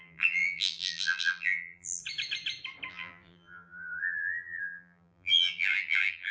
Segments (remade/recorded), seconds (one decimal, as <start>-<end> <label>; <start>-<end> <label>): 0.0-2.0 remade; 2.0-2.9 recorded; 2.9-6.3 remade